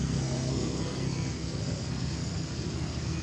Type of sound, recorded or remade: remade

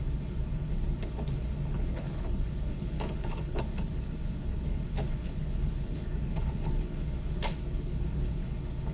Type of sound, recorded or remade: remade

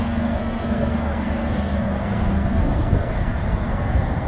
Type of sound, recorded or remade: remade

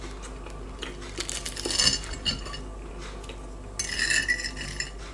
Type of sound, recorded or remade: recorded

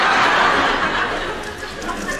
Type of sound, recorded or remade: recorded